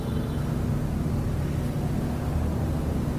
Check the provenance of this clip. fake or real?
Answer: fake